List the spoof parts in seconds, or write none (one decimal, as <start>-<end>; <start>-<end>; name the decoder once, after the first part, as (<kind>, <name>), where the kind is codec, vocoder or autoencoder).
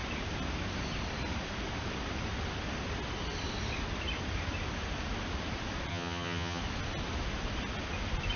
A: 5.9-6.6 (vocoder, HiFi-GAN)